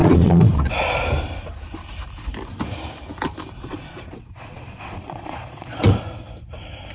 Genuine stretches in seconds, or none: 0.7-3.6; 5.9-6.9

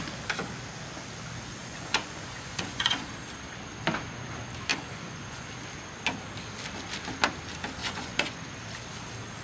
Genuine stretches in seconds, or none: 0.0-1.6; 3.1-4.7; 5.5-7.8; 8.4-9.4

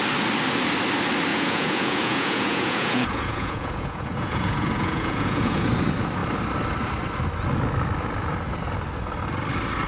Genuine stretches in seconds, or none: 0.0-1.3; 5.7-9.9

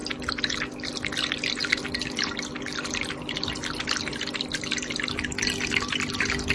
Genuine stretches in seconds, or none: 0.0-6.5

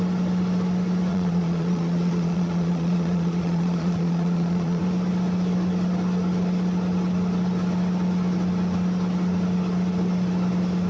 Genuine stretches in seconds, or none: 0.0-1.1; 4.8-10.9

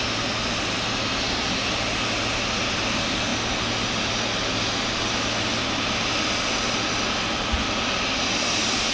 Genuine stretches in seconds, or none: 0.0-8.9